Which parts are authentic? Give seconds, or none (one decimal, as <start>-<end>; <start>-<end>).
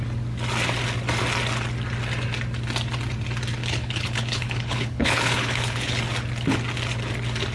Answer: 0.0-3.6; 6.0-7.5